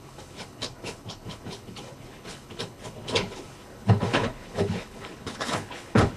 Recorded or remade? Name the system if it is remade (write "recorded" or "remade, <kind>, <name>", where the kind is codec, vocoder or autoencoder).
remade, codec, HILCodec